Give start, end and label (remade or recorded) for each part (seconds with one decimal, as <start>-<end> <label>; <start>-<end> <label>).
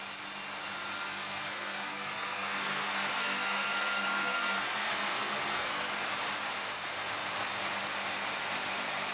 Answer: 0.0-0.9 recorded; 0.9-5.9 remade; 5.9-9.1 recorded